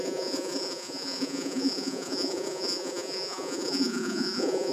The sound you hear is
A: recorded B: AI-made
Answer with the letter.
B